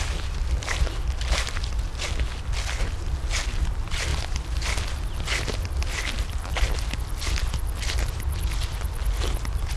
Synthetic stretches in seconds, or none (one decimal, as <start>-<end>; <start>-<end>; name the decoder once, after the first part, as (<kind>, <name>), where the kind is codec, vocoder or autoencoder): none